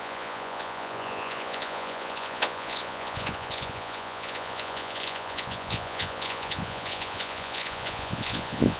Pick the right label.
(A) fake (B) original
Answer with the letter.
A